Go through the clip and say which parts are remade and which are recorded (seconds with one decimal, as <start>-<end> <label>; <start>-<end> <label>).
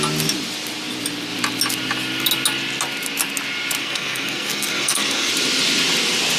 0.0-3.8 recorded; 3.8-5.3 remade; 5.3-6.4 recorded